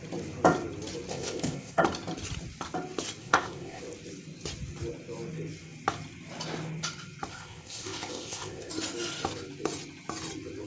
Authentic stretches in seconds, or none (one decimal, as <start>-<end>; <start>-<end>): 0.0-1.1; 1.8-3.2; 3.8-7.3; 8.7-10.7

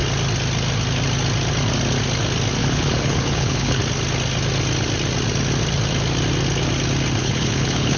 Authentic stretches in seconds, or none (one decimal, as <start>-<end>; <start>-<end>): 0.0-2.6; 3.8-7.2